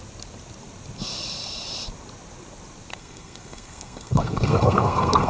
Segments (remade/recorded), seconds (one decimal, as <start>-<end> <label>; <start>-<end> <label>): 0.0-2.9 recorded; 2.9-5.3 remade